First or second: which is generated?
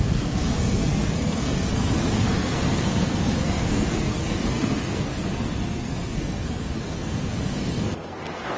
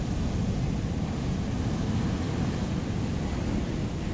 first